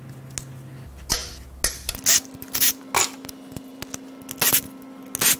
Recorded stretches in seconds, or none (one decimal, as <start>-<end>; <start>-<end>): 0.0-5.4